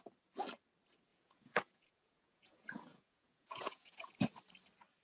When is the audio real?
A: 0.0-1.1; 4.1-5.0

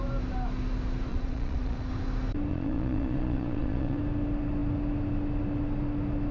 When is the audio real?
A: 0.0-1.1; 1.9-2.5; 4.0-6.3

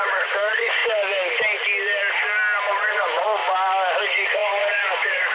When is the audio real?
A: 0.8-2.7; 3.4-4.0

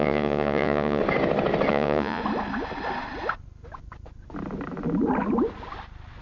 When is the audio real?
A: 1.0-1.7; 2.2-6.2

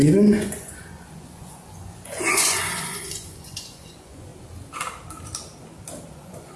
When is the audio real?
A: 4.3-6.1

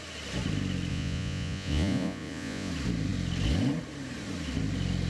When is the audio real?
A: 0.0-0.9; 2.7-5.1